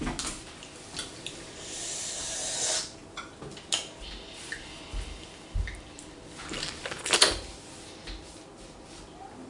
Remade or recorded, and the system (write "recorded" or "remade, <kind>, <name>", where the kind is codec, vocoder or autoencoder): recorded